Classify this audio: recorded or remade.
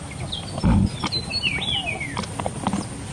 recorded